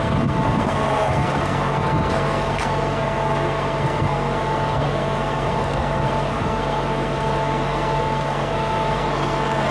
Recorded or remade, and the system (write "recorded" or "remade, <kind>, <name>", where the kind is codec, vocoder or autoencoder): remade, codec, SNAC